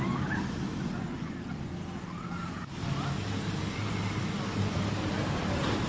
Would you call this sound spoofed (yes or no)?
no